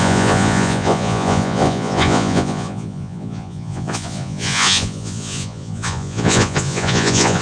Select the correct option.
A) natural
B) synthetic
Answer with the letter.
B